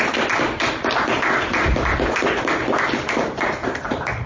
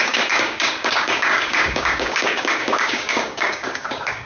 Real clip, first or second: first